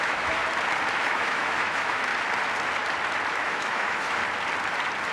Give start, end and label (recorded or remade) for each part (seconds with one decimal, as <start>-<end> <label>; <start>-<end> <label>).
0.0-0.4 remade; 0.4-0.9 recorded; 0.9-2.1 remade; 2.1-3.3 recorded; 3.3-4.2 remade; 4.2-5.1 recorded